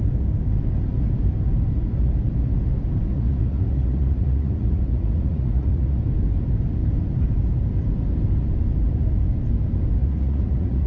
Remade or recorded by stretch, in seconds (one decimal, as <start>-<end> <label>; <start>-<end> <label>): 0.0-3.1 recorded; 3.1-6.0 remade; 6.0-10.0 recorded; 10.0-10.9 remade